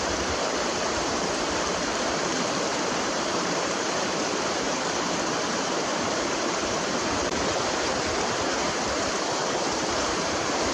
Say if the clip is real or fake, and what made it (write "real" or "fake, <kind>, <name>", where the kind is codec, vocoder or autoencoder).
fake, vocoder, BigVGAN v2